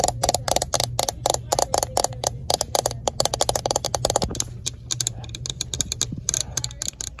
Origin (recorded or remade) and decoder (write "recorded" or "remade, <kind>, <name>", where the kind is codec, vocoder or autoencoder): recorded